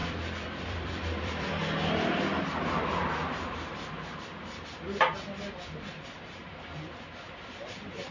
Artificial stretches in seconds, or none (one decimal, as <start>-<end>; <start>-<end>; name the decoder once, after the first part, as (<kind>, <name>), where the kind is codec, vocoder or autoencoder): 0.0-1.6 (vocoder, BigVGAN v2); 6.5-8.1